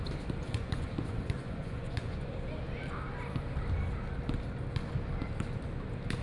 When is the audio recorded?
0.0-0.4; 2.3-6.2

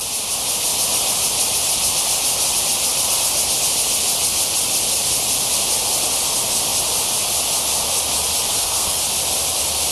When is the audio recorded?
0.0-8.5; 9.0-9.9

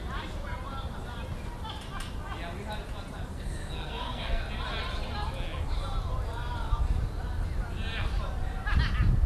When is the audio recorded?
0.0-3.3; 4.4-9.3

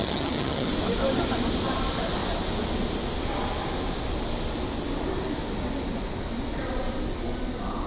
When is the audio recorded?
0.7-7.9

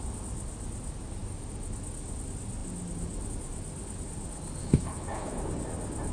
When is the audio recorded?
0.0-4.6; 5.5-6.1

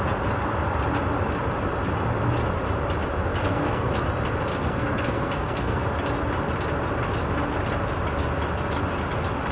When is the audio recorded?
0.0-3.3; 3.9-4.5; 5.8-9.5

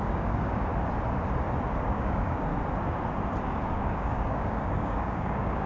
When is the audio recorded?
0.7-1.7; 2.5-3.4

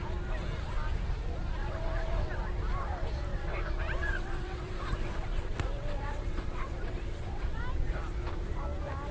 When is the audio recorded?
0.0-1.6; 2.4-3.3; 7.6-9.1